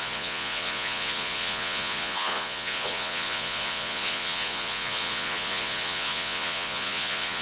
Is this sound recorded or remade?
remade